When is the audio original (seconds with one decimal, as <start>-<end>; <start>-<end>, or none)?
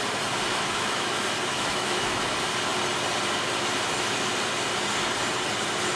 0.0-0.5; 1.1-1.5; 2.2-6.0